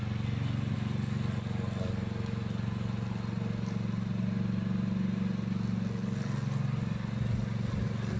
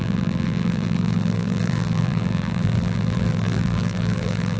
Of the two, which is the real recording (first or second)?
first